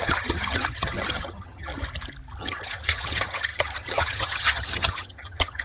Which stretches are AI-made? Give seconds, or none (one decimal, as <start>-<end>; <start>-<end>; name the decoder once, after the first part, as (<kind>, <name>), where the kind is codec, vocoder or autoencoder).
0.0-1.7 (vocoder, HiFi-GAN); 2.4-5.6